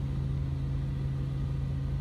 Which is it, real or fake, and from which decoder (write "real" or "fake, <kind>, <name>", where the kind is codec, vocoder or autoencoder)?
real